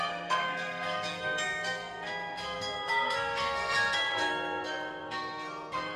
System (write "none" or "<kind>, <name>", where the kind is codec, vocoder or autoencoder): codec, SNAC